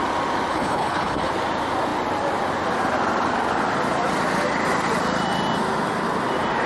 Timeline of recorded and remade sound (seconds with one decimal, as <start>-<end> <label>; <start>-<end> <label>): 0.0-0.5 recorded; 0.5-1.3 remade; 1.3-6.7 recorded